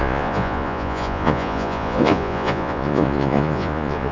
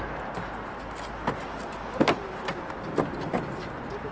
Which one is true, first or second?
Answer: second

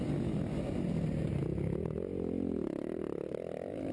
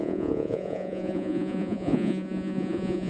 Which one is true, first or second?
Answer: first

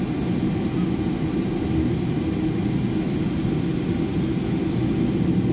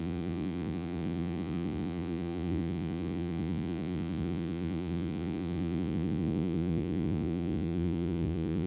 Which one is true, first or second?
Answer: first